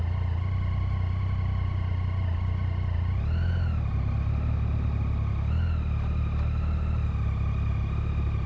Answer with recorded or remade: recorded